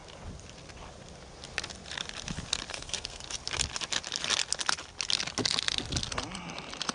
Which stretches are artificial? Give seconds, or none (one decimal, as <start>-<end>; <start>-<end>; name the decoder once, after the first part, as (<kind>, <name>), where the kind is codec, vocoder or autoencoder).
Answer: 2.7-3.2 (codec, SNAC)